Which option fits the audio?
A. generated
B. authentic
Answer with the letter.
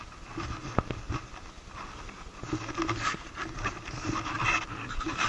B